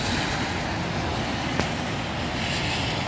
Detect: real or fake real